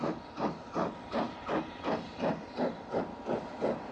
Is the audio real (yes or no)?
yes